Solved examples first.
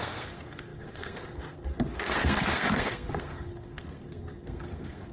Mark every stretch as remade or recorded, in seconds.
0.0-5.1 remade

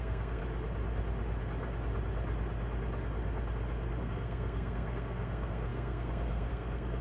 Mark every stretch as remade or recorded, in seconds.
0.0-0.4 remade; 0.4-4.0 recorded; 4.0-7.0 remade

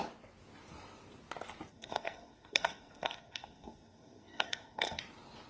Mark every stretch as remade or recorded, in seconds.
0.0-1.7 recorded; 1.7-5.0 remade; 5.0-5.5 recorded

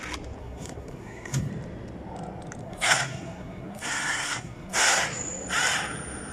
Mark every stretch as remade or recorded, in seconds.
0.0-0.4 recorded; 0.4-1.5 remade; 1.5-2.6 recorded; 2.6-5.0 remade; 5.0-6.3 recorded

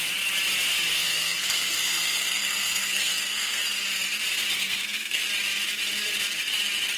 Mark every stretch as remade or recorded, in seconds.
0.0-0.9 recorded; 0.9-3.6 remade; 3.6-4.6 recorded; 4.6-5.2 remade; 5.2-7.0 recorded

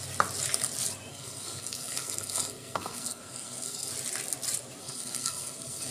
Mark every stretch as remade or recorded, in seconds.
0.0-1.1 recorded; 1.1-3.9 remade; 3.9-4.8 recorded; 4.8-5.9 remade

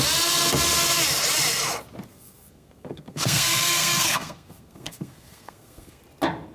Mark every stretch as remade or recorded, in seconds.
0.0-2.1 recorded; 2.1-6.0 remade; 6.0-6.5 recorded

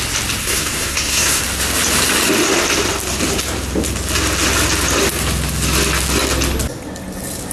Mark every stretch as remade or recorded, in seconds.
0.0-0.4 recorded; 0.4-1.4 remade; 1.4-7.5 recorded